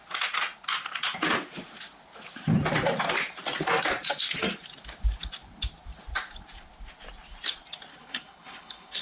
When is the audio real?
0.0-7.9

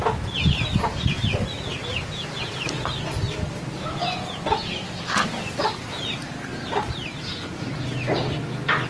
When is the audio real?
0.0-8.9

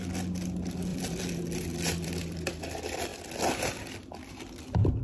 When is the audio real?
0.0-0.9; 2.5-5.0

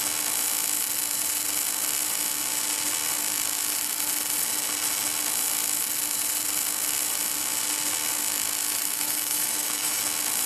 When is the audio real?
0.0-8.8; 10.0-10.5

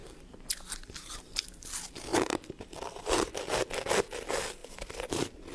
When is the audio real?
0.0-2.1; 3.4-4.6